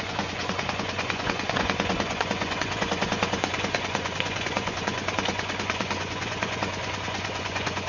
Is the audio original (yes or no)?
no